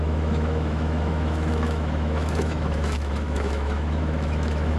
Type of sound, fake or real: fake